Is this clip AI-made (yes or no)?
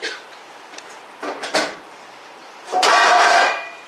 yes